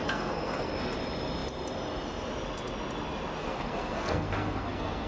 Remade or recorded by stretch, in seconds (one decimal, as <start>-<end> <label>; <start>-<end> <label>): 0.0-0.7 remade; 0.7-3.4 recorded; 3.4-5.1 remade